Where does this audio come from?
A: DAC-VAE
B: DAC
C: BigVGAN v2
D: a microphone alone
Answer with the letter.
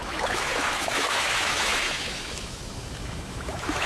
A